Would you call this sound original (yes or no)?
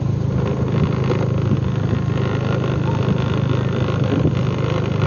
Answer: yes